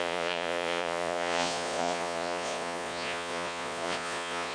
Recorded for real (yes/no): no